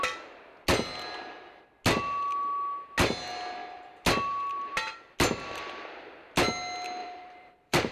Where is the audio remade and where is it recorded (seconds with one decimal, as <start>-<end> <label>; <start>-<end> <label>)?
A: 0.0-7.0 recorded; 7.0-7.9 remade